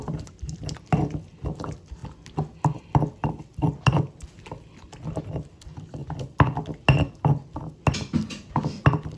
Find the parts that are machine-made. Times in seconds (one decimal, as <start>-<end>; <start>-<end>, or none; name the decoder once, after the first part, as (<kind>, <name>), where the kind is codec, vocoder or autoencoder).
0.0-2.0 (vocoder, BigVGAN v2); 5.2-6.0